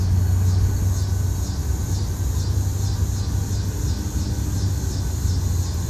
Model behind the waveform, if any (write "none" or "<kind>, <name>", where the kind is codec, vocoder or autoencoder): none